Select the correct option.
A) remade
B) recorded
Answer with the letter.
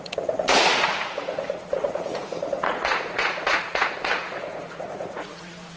A